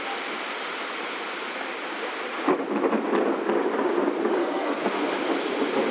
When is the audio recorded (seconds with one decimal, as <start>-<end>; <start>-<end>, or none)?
0.0-4.4; 5.1-5.9